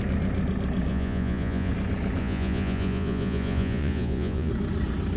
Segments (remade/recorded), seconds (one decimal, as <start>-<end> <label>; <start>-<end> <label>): 0.0-0.9 recorded; 0.9-1.7 remade; 1.7-2.2 recorded; 2.2-4.5 remade; 4.5-5.2 recorded